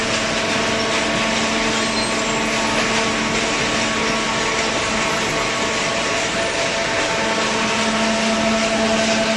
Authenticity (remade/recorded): recorded